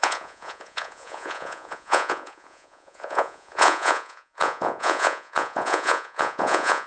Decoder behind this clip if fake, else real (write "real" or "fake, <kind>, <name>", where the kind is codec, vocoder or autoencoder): fake, vocoder, Vocos